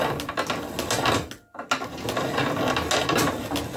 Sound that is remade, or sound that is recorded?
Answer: recorded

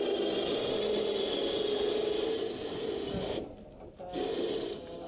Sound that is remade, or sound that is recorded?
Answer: recorded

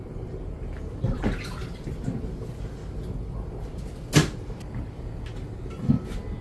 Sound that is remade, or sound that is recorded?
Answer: recorded